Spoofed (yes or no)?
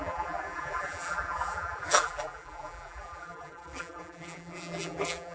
yes